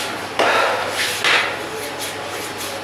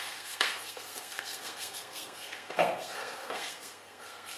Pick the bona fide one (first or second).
first